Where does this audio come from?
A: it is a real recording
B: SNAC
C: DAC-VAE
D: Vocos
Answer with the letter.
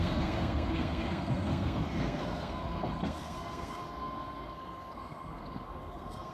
B